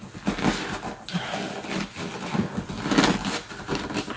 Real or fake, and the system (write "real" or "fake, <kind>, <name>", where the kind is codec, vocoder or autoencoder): real